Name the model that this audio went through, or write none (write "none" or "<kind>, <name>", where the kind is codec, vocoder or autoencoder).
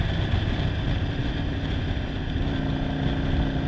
none